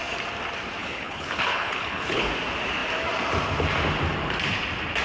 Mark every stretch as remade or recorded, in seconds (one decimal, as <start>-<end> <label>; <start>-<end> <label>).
0.0-0.8 recorded; 0.8-2.3 remade; 2.3-5.0 recorded